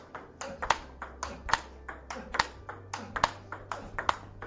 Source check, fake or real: real